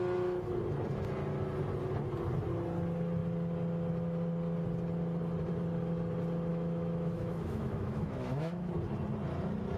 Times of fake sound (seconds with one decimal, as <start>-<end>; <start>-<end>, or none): 6.5-8.7